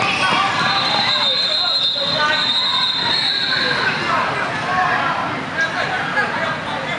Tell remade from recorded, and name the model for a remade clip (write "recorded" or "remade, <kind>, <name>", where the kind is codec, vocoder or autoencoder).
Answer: recorded